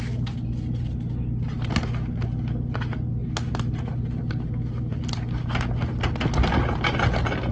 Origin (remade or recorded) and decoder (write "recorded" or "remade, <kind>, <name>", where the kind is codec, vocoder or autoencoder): recorded